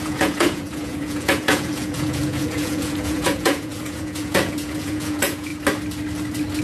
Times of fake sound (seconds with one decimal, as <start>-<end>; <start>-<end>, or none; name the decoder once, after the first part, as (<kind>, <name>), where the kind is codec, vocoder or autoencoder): 0.0-5.5 (vocoder, Vocos)